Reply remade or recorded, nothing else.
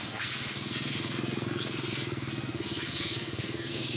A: remade